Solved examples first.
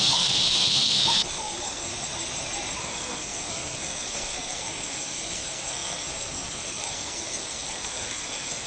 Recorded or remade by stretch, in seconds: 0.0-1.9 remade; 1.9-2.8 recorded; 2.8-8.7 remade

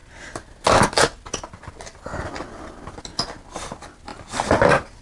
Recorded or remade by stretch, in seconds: 0.0-5.0 recorded

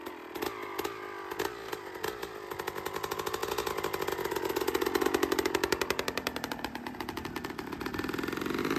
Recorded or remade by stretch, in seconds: 0.0-8.8 recorded

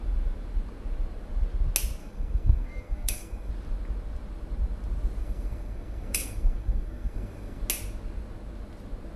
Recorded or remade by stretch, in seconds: 0.0-2.0 recorded; 2.0-3.5 remade; 3.5-5.2 recorded; 5.2-7.6 remade; 7.6-9.2 recorded

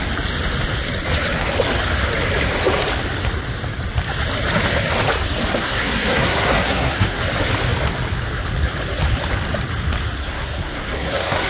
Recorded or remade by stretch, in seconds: 0.0-5.5 recorded; 5.5-7.2 remade; 7.2-10.2 recorded; 10.2-11.5 remade

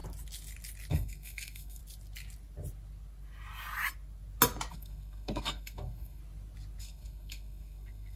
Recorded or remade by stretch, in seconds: 0.0-0.9 recorded; 0.9-1.8 remade; 1.8-4.7 recorded; 4.7-6.2 remade; 6.2-6.8 recorded; 6.8-8.2 remade

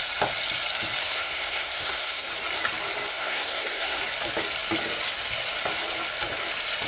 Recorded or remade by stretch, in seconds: 0.0-1.0 recorded; 1.0-2.3 remade; 2.3-3.1 recorded; 3.1-4.0 remade; 4.0-6.9 recorded

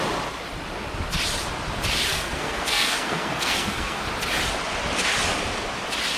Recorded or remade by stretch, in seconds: 0.0-2.1 recorded; 2.1-4.0 remade; 4.0-6.2 recorded